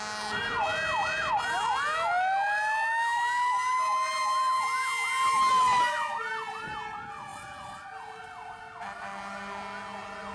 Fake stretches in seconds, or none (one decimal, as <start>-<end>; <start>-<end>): none